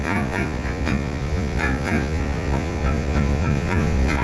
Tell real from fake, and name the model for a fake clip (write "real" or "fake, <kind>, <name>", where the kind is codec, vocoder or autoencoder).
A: fake, vocoder, Vocos